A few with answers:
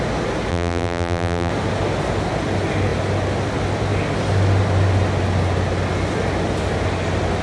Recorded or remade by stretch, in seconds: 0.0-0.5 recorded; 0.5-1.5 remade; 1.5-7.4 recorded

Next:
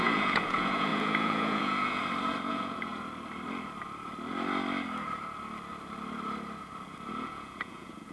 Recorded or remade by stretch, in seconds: 0.0-2.0 remade; 2.0-2.5 recorded; 2.5-2.9 remade; 2.9-7.1 recorded; 7.1-8.1 remade